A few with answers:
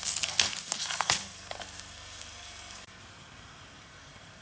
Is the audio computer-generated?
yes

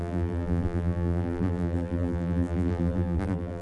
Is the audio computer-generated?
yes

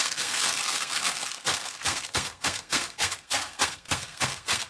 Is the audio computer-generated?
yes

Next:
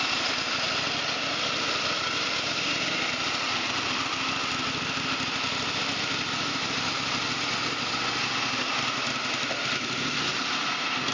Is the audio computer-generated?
no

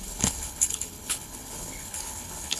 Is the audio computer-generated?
yes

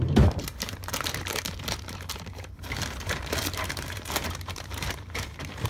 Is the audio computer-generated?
yes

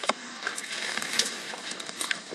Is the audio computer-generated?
yes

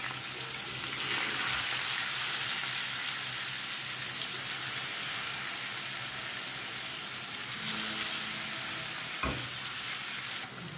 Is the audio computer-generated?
no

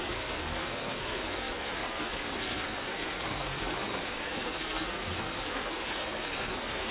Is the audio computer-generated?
yes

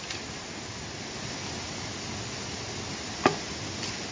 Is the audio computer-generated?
no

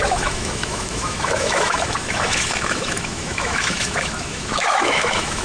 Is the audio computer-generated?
yes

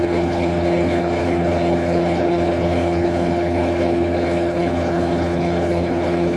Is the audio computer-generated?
yes